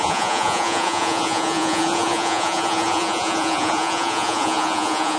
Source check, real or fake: fake